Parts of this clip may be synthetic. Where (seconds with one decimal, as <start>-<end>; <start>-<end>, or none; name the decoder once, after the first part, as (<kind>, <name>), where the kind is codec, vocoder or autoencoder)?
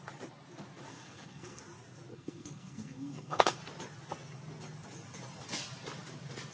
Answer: 0.9-1.6 (codec, SNAC); 2.1-3.6